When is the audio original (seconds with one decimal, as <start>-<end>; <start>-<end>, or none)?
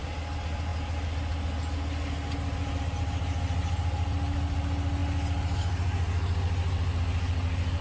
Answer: 0.0-7.8